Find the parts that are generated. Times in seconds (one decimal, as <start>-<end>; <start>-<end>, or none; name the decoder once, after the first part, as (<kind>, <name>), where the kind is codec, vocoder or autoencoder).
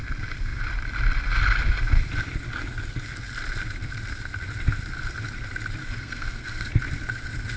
5.8-6.7 (codec, SNAC)